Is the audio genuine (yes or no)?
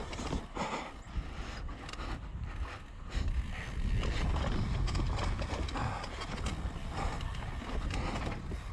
yes